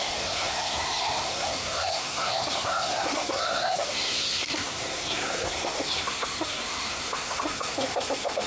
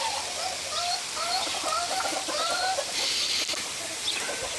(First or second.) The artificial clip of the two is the first